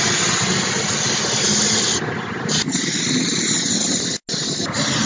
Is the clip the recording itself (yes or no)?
yes